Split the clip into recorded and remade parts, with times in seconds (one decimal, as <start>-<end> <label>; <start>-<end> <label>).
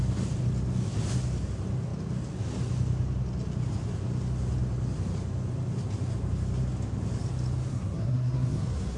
0.0-7.7 recorded; 7.7-9.0 remade